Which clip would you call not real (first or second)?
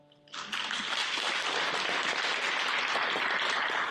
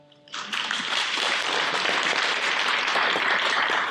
second